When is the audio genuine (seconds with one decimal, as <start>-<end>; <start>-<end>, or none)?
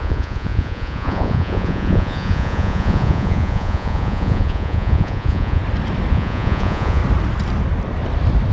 5.6-6.1; 7.0-8.5